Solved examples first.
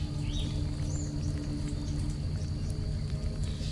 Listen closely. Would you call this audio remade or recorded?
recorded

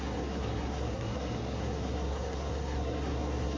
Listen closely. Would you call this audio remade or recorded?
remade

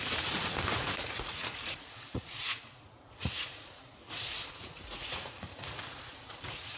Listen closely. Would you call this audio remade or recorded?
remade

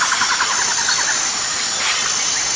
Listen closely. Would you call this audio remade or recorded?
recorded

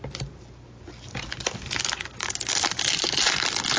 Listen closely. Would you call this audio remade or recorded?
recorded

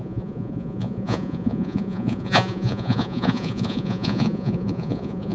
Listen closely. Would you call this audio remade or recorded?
remade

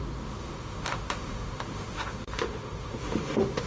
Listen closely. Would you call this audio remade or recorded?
remade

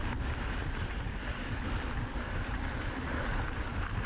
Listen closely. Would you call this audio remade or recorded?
recorded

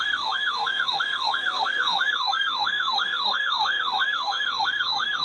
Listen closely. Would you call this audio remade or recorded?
remade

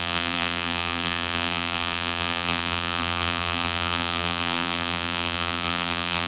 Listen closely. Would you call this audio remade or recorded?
remade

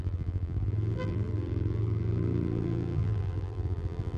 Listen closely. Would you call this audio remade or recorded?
remade